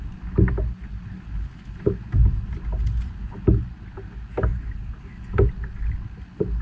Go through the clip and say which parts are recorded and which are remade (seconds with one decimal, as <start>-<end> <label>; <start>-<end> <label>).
0.0-4.5 recorded; 4.5-5.2 remade; 5.2-6.6 recorded